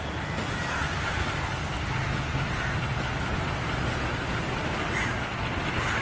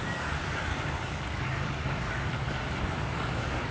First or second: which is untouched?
first